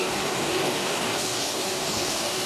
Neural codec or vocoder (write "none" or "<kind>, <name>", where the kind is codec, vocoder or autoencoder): codec, DAC